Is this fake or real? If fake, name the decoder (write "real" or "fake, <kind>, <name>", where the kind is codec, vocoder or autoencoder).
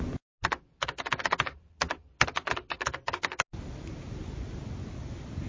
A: real